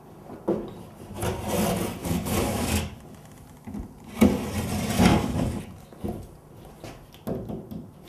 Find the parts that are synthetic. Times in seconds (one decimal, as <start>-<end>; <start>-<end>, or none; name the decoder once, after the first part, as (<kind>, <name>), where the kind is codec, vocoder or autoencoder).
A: 2.0-3.0 (codec, DAC); 5.1-5.6